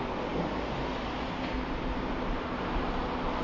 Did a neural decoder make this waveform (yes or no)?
no